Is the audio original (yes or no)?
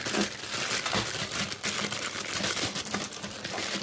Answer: yes